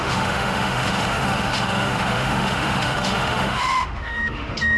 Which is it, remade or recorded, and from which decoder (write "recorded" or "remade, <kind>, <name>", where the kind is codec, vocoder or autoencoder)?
remade, autoencoder, DAC-VAE